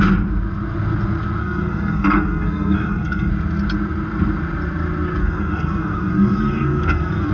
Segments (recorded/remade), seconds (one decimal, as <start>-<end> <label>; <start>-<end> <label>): 0.0-1.4 recorded; 1.4-3.3 remade; 3.3-5.2 recorded; 5.2-7.3 remade